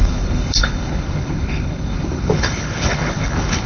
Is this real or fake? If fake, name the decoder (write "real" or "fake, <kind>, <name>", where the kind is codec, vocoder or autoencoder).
fake, codec, HILCodec